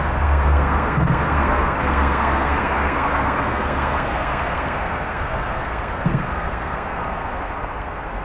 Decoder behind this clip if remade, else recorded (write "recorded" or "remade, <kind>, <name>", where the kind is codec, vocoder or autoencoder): remade, codec, SNAC